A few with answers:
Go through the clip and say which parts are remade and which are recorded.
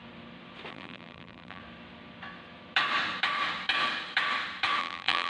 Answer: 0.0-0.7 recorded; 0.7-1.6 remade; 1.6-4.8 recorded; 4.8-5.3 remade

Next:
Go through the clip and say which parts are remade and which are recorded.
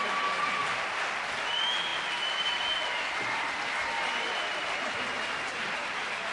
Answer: 0.0-6.3 recorded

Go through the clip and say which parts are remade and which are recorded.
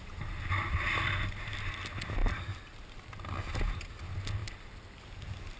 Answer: 0.0-5.6 recorded